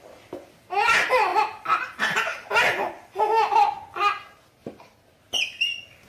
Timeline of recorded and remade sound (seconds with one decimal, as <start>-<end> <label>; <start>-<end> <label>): 0.0-6.1 recorded